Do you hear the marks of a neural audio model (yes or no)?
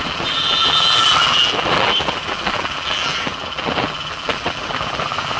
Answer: yes